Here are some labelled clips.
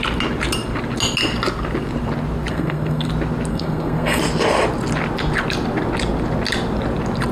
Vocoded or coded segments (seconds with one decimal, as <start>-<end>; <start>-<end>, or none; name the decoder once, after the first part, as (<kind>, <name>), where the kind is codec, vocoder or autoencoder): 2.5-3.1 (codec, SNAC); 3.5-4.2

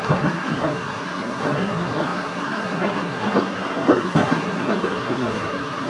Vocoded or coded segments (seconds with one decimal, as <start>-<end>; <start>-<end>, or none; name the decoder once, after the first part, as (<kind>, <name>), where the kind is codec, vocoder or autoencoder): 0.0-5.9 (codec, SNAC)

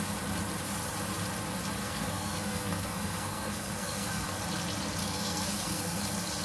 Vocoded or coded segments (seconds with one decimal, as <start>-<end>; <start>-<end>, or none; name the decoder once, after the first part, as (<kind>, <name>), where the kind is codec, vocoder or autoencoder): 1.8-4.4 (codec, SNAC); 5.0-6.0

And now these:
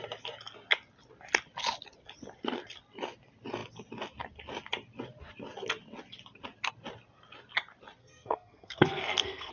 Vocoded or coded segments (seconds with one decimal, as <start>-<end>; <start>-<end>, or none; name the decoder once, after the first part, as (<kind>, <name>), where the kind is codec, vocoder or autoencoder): 8.0-9.5 (codec, SNAC)

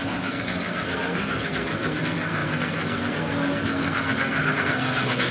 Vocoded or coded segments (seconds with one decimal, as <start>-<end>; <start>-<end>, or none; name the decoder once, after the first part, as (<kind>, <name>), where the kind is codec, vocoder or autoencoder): 0.0-5.3 (codec, SNAC)

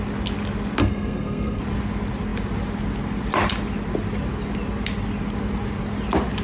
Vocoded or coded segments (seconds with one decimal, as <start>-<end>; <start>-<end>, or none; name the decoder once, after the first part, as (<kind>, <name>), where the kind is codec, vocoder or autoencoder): 0.8-1.6 (codec, SNAC)